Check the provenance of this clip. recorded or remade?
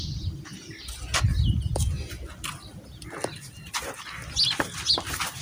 recorded